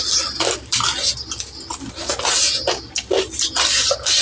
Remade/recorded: recorded